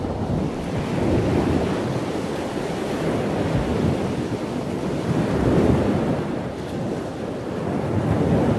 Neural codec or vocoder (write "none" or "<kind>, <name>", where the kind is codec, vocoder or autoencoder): none